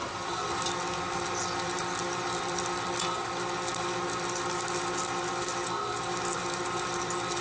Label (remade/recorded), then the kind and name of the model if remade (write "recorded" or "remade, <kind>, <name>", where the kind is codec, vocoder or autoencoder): recorded